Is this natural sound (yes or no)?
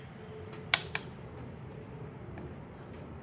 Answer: yes